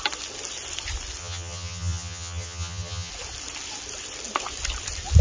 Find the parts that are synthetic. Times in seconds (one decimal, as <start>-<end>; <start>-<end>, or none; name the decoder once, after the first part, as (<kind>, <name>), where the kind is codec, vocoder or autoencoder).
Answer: 1.2-3.1 (vocoder, HiFi-GAN)